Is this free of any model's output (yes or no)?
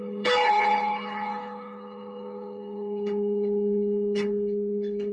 no